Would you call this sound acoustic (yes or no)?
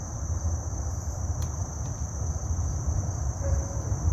no